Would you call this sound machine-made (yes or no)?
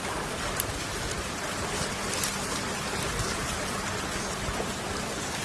no